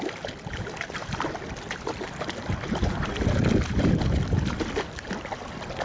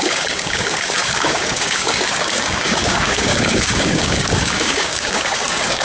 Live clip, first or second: first